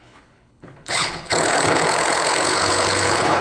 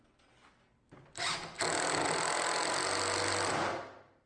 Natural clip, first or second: second